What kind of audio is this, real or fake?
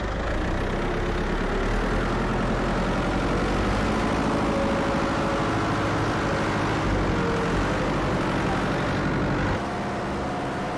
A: real